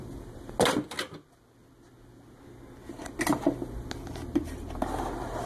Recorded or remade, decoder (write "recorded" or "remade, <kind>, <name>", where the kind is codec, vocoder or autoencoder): recorded